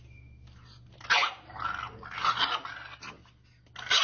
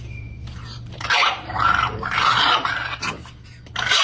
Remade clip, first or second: second